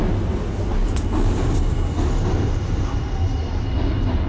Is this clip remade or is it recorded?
recorded